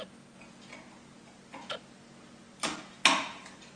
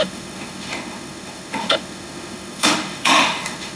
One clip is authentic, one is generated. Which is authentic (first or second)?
first